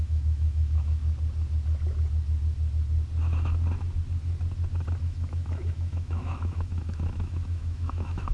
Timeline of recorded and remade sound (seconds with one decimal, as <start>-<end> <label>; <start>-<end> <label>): 0.0-1.0 remade; 1.0-5.0 recorded; 5.0-8.3 remade